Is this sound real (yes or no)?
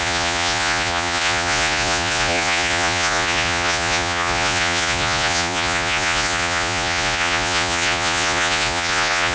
no